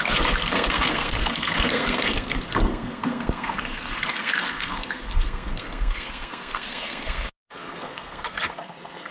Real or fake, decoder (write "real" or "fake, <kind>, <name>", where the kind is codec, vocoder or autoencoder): fake, codec, SNAC